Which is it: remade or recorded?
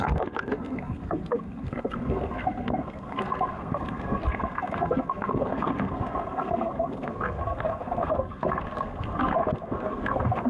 remade